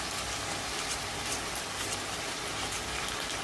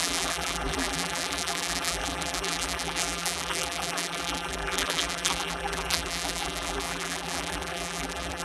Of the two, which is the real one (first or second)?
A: first